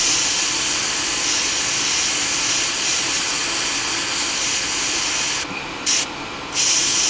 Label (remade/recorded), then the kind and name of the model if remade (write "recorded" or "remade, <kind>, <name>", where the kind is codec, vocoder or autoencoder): recorded